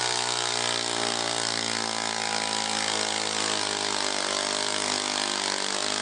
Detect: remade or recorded recorded